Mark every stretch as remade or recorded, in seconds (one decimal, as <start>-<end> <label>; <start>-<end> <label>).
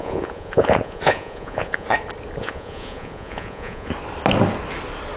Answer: 0.0-1.9 remade; 1.9-2.4 recorded; 2.4-3.9 remade; 3.9-5.2 recorded